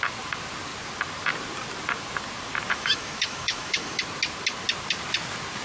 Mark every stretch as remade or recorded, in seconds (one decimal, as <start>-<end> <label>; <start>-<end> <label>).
0.0-2.7 recorded; 2.7-4.0 remade; 4.0-5.6 recorded